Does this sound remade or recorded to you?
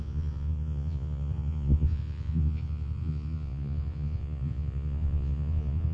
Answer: remade